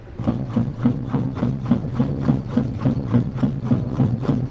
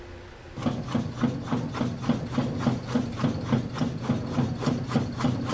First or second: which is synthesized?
first